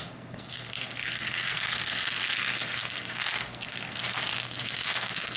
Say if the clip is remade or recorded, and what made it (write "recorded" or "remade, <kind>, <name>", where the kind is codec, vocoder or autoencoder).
remade, codec, SNAC